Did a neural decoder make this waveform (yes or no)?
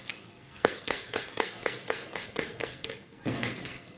yes